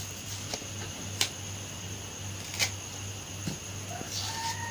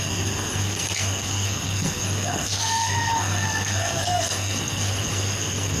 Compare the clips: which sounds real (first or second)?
first